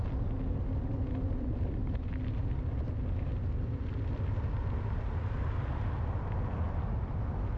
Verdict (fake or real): real